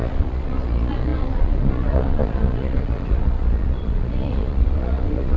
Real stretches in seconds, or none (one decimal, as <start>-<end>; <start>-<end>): none